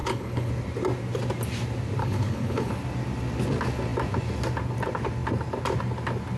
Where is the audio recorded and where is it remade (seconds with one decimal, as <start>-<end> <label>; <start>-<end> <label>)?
0.0-0.5 remade; 0.5-2.0 recorded; 2.0-2.7 remade; 2.7-6.4 recorded